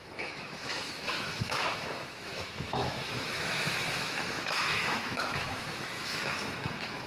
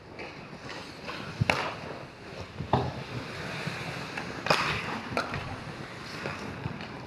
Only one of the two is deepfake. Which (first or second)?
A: first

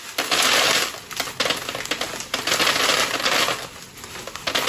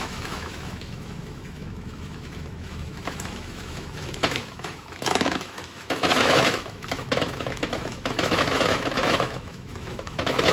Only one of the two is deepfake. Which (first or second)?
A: second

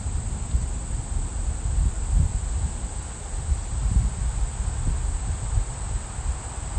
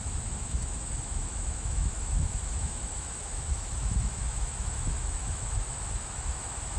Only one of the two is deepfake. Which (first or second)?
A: second